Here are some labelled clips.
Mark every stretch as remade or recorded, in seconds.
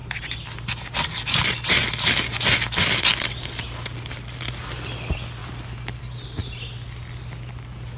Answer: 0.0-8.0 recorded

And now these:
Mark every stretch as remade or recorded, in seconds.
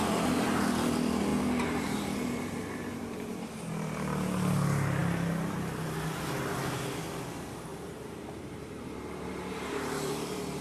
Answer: 0.0-1.3 recorded; 1.3-3.3 remade; 3.3-7.7 recorded; 7.7-10.6 remade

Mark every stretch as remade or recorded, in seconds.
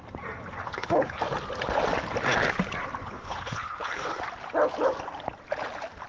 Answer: 0.0-0.6 recorded; 0.6-1.2 remade; 1.2-3.0 recorded; 3.0-4.2 remade; 4.2-6.1 recorded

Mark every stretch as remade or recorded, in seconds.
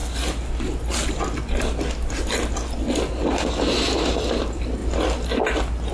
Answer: 0.0-5.9 recorded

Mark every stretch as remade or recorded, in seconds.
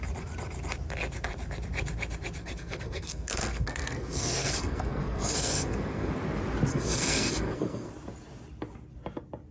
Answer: 0.0-2.4 recorded; 2.4-6.1 remade; 6.1-6.7 recorded; 6.7-7.9 remade; 7.9-9.5 recorded